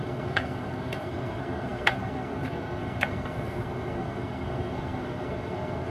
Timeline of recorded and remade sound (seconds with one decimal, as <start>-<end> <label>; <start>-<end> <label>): 0.0-5.9 remade